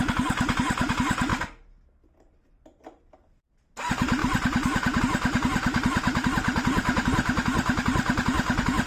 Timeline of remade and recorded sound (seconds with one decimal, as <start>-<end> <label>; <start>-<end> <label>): 0.0-8.9 recorded